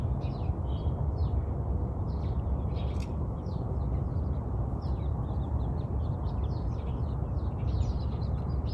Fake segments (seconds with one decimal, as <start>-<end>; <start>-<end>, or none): none